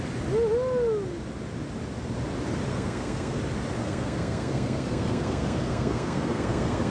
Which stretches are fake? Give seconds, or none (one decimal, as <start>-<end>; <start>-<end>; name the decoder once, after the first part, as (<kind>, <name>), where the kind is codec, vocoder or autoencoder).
2.7-3.4 (codec, SNAC); 3.8-6.9